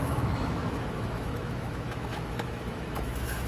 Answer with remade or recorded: remade